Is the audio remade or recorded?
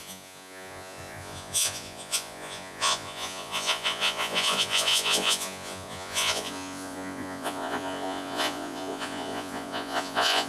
remade